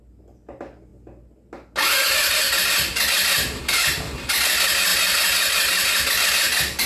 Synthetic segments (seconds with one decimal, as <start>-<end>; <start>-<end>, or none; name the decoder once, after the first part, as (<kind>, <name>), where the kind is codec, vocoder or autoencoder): none